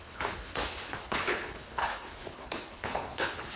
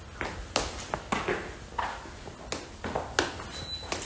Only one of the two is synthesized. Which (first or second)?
first